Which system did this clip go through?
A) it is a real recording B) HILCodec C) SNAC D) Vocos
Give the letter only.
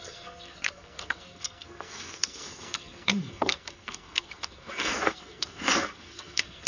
C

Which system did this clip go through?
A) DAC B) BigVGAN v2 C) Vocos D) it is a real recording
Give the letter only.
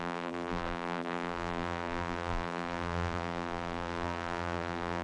B